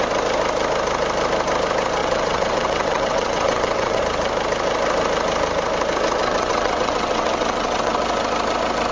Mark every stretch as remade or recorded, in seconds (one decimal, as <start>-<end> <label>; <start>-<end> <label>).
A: 0.0-2.0 recorded; 2.0-4.0 remade; 4.0-6.2 recorded; 6.2-8.0 remade; 8.0-8.9 recorded